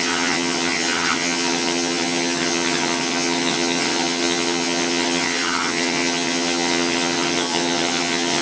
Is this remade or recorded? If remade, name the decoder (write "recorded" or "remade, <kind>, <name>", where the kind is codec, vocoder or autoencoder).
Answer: remade, vocoder, HiFi-GAN